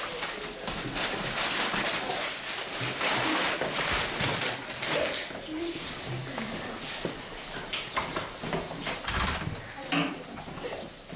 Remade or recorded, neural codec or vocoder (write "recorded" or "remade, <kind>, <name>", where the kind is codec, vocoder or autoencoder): recorded